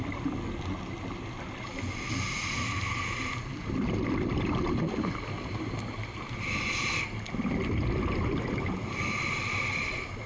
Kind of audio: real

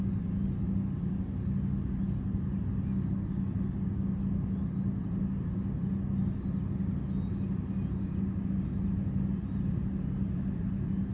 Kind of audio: real